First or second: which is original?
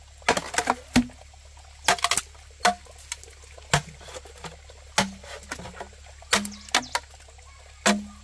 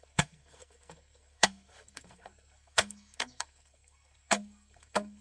first